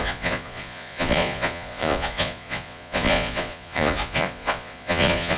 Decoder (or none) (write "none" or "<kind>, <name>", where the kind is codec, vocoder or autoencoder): vocoder, Vocos